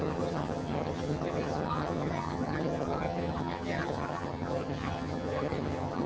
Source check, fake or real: fake